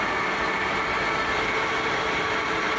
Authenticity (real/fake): real